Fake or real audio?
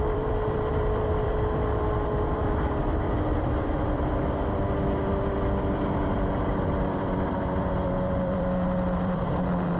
fake